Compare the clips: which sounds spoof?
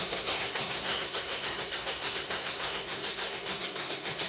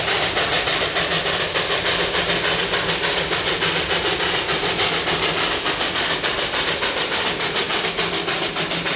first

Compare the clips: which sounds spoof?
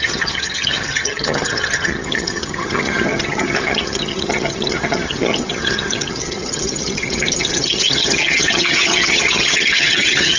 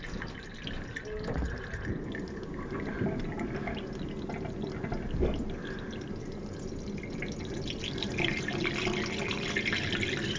first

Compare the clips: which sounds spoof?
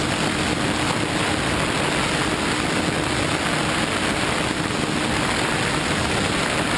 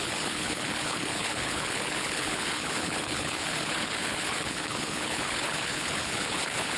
second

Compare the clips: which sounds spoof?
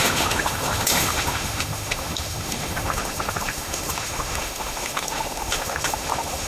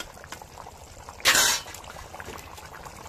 first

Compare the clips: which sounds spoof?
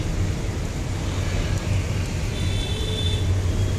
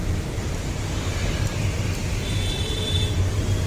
second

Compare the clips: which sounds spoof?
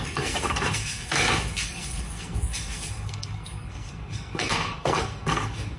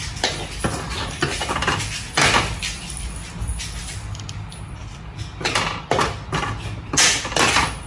first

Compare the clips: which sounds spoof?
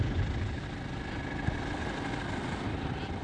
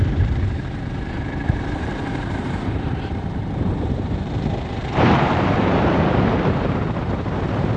second